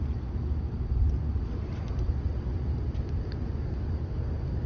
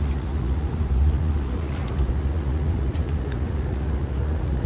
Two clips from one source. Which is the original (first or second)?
first